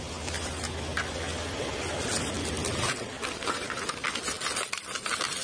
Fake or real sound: real